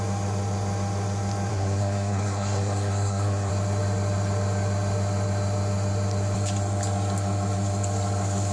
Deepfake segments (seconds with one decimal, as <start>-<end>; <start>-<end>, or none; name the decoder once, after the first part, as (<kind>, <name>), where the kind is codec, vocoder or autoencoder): 1.5-3.5 (codec, SNAC)